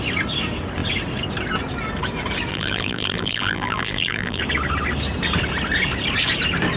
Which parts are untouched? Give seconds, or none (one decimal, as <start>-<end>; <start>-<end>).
0.0-2.5; 4.4-6.8